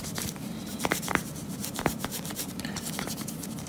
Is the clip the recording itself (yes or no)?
no